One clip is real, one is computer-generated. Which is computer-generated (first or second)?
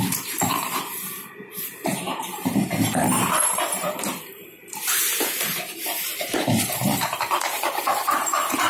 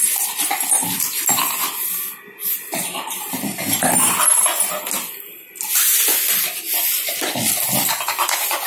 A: first